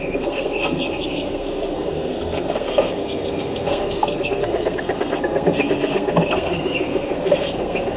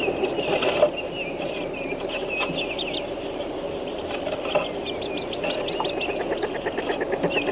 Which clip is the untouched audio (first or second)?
second